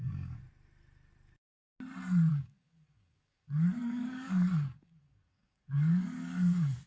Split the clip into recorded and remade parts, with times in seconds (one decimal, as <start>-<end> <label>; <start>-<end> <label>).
0.0-0.4 remade; 0.4-2.3 recorded; 2.3-6.9 remade